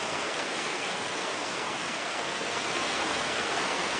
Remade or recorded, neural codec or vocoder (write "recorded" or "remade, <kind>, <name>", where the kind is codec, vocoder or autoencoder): remade, codec, SNAC